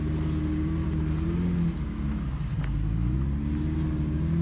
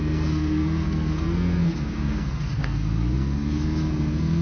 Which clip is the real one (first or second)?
first